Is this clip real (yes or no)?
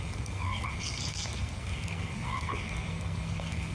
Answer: no